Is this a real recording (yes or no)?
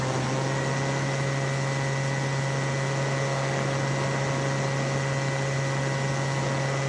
yes